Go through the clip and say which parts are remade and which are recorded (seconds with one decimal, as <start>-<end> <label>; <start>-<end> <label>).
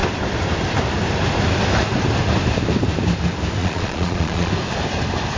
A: 0.0-3.6 recorded; 3.6-4.5 remade; 4.5-5.4 recorded